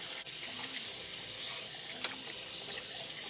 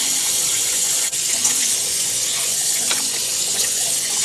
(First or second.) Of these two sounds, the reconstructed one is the second